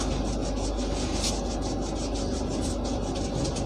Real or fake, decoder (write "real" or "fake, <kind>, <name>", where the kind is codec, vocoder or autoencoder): real